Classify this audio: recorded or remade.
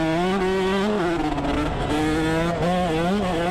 recorded